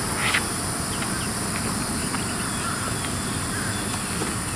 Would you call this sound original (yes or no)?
yes